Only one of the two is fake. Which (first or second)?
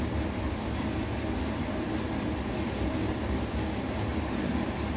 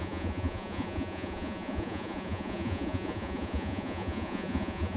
second